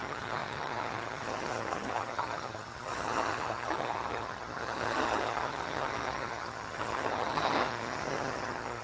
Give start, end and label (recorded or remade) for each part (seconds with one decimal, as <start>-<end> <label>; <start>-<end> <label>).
0.0-8.8 remade